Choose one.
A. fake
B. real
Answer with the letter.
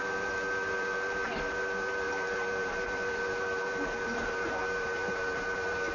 A